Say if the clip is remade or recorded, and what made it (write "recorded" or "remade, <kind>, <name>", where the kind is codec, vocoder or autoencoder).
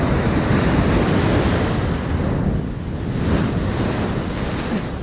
recorded